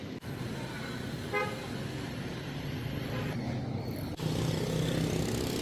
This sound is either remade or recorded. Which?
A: recorded